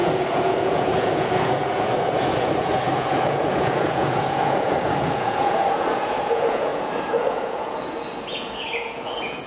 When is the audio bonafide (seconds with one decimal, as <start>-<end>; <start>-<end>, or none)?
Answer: none

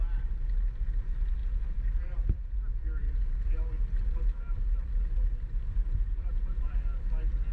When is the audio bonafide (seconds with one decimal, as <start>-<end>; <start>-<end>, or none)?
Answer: 0.0-6.1; 6.7-7.5